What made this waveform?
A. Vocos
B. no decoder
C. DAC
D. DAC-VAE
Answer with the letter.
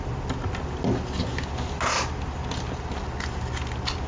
B